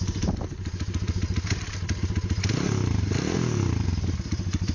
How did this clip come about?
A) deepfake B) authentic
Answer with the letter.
A